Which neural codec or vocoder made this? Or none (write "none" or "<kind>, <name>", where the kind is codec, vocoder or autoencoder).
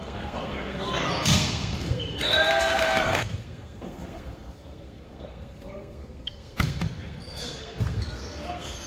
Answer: codec, SNAC